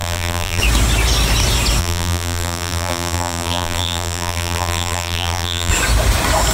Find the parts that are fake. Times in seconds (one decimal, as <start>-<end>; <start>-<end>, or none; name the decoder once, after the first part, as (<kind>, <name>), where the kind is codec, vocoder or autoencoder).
0.0-0.6 (vocoder, BigVGAN v2); 1.8-5.7